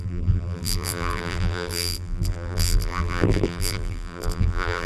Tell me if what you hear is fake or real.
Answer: fake